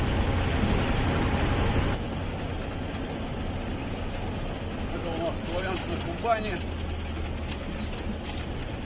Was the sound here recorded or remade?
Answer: recorded